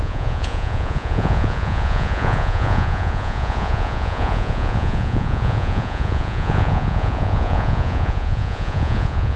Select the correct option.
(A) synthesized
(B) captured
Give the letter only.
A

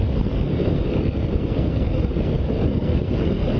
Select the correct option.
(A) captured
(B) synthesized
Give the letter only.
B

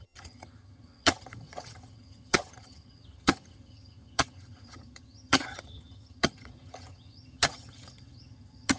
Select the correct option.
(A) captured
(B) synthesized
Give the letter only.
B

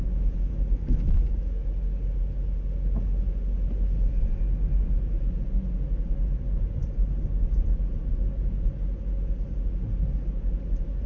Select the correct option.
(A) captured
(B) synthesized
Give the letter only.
A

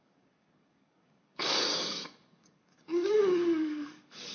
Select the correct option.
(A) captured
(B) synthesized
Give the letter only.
B